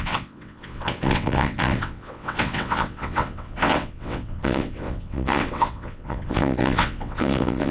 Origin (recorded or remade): remade